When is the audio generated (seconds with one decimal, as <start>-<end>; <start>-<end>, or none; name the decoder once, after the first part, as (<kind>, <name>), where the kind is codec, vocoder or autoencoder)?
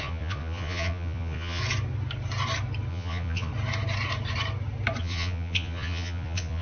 0.0-1.6 (vocoder, Vocos); 2.9-3.5; 5.0-6.6